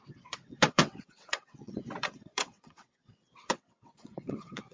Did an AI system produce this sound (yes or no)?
yes